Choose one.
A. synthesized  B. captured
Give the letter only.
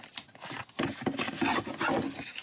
B